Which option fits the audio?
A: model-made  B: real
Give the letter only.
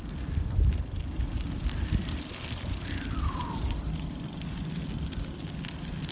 B